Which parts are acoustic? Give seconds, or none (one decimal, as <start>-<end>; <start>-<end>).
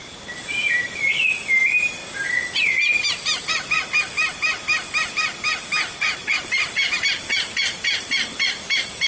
2.0-5.1; 7.3-8.0